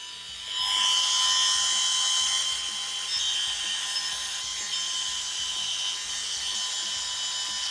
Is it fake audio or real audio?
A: real